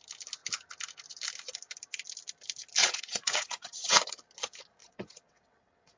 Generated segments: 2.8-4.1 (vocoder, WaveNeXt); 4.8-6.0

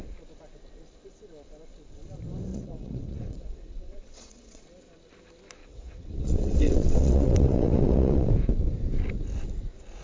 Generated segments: 2.5-4.6 (vocoder, WaveNeXt); 5.6-8.3

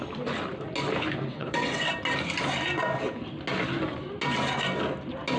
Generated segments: 1.3-1.9 (vocoder, WaveNeXt)

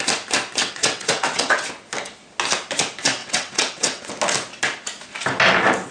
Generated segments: 0.6-1.7 (vocoder, WaveNeXt); 3.2-4.1

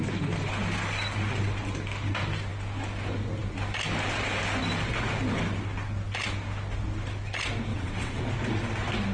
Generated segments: 7.7-8.3 (vocoder, WaveNeXt)